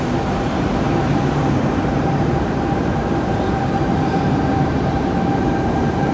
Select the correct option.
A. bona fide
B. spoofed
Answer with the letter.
B